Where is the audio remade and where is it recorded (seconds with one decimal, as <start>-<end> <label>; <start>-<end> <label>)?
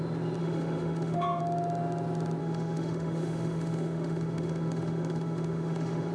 0.0-0.4 recorded; 0.4-1.4 remade; 1.4-2.4 recorded; 2.4-6.1 remade